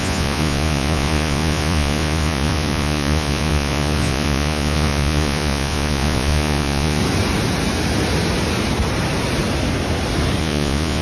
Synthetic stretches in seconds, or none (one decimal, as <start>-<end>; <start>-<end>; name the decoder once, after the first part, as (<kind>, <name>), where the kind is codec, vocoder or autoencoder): 0.0-7.0 (vocoder, Vocos); 10.4-11.0